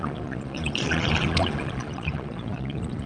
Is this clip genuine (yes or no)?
no